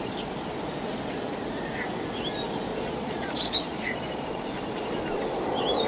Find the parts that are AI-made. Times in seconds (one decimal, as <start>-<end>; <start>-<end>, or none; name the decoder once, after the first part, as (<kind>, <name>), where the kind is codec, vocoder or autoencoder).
2.7-4.4 (vocoder, Vocos)